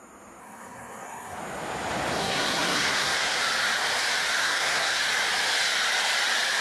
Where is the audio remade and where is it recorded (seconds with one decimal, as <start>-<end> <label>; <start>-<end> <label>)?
0.0-0.4 recorded; 0.4-1.4 remade; 1.4-2.2 recorded; 2.2-3.4 remade; 3.4-4.4 recorded; 4.4-5.0 remade; 5.0-6.6 recorded